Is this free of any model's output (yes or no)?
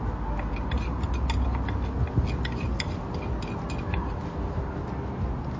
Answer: yes